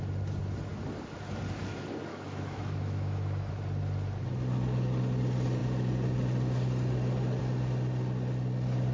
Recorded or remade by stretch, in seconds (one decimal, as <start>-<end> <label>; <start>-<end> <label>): 0.0-2.1 recorded; 2.1-3.5 remade; 3.5-8.9 recorded